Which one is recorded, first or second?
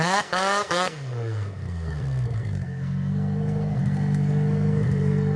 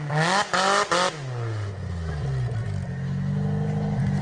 second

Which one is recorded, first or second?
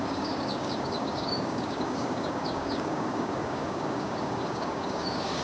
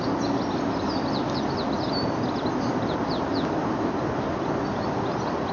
second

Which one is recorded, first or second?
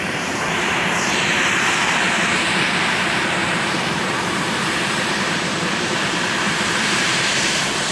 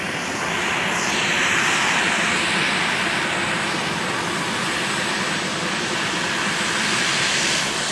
second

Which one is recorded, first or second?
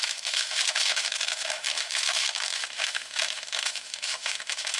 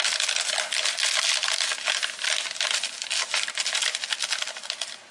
second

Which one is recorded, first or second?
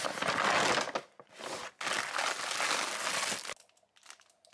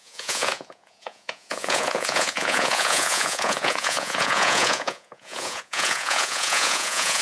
first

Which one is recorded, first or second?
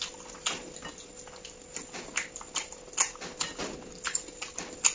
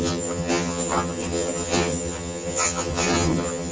first